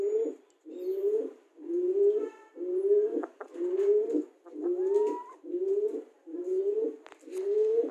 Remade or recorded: recorded